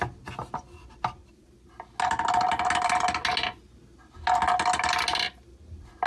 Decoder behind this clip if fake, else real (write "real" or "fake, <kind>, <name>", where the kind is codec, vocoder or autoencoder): real